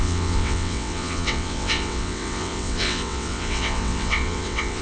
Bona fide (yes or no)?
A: no